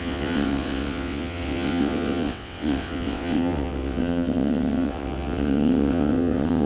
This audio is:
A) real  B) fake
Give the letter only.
B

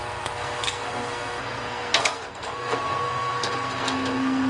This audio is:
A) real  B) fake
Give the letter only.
B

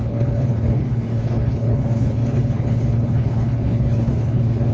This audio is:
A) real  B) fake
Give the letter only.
B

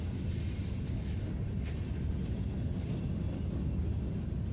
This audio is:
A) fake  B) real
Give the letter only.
B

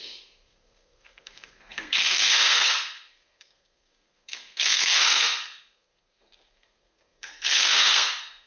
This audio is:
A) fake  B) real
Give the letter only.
A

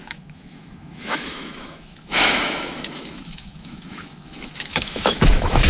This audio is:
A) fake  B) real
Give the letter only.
A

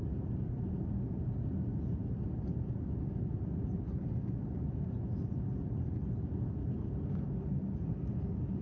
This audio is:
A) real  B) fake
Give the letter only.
A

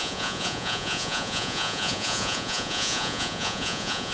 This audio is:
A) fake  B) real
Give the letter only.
A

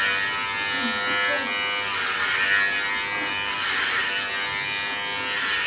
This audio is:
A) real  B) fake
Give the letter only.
A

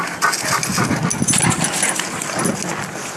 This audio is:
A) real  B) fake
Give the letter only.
A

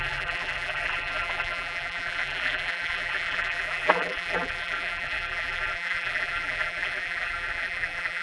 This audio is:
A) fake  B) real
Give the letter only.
A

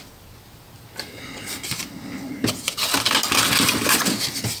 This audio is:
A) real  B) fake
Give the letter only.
A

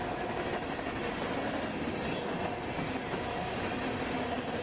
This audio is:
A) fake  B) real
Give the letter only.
B